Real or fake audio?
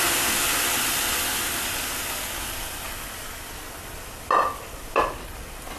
real